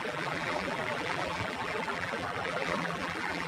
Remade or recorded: remade